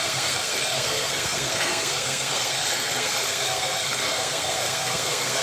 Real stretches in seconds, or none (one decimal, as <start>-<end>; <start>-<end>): none